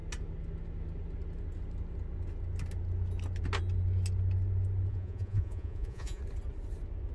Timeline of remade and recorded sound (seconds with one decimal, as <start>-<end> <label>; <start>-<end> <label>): 0.0-4.9 recorded; 4.9-6.2 remade; 6.2-7.1 recorded